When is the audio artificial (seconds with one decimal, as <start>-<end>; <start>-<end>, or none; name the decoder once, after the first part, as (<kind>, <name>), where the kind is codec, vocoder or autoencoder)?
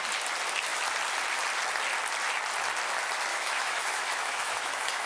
3.3-5.1 (autoencoder, DAC-VAE)